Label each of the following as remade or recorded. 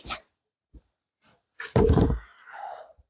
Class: remade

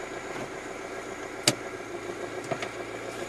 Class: recorded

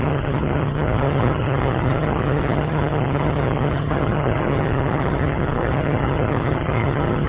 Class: remade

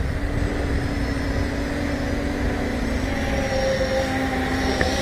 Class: recorded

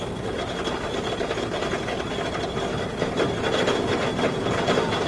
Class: recorded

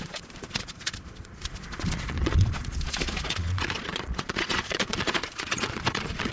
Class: remade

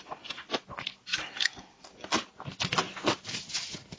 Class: recorded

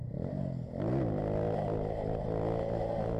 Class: recorded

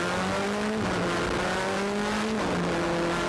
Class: recorded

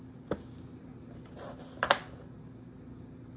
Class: recorded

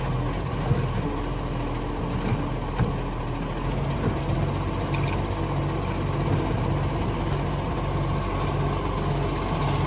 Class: recorded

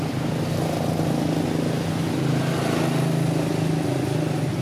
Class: recorded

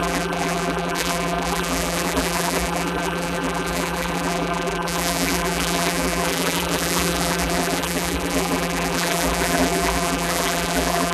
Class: remade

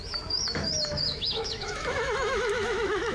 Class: remade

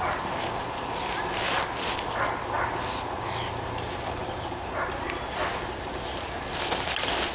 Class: recorded